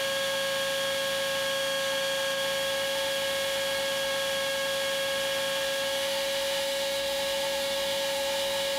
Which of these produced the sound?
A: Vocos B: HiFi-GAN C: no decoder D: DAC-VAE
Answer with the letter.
D